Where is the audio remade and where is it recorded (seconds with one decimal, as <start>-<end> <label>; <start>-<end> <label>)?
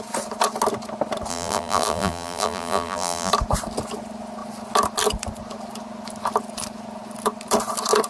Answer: 0.0-1.3 recorded; 1.3-3.3 remade; 3.3-8.1 recorded